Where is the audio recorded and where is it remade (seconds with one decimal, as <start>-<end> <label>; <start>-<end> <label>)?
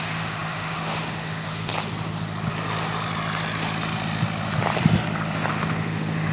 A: 0.0-1.7 remade; 1.7-5.5 recorded; 5.5-6.3 remade